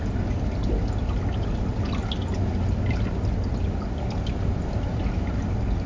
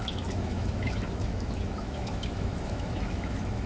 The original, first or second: first